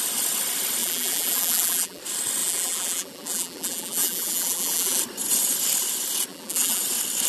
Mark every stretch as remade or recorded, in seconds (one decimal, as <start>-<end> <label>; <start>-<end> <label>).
0.0-0.8 recorded; 0.8-2.0 remade; 2.0-2.4 recorded; 2.4-5.0 remade; 5.0-6.3 recorded; 6.3-6.8 remade; 6.8-7.3 recorded